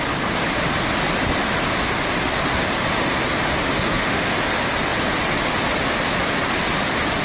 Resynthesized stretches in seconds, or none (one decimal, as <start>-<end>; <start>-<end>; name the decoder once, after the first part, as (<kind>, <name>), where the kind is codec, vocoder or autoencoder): 3.7-4.3 (autoencoder, DAC-VAE)